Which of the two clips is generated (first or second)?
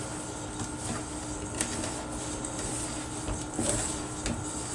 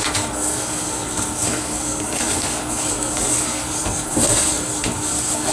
second